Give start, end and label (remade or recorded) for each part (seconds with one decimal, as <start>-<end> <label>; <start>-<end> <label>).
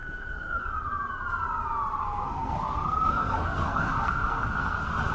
0.0-0.7 remade; 0.7-2.0 recorded; 2.0-5.1 remade